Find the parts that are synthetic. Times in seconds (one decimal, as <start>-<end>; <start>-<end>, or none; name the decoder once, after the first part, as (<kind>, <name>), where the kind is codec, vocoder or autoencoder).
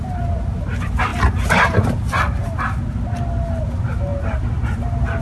none